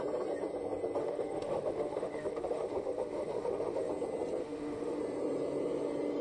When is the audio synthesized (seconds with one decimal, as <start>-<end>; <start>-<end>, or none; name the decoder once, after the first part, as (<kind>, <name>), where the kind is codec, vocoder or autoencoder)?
1.0-3.9 (autoencoder, DAC-VAE); 4.4-5.0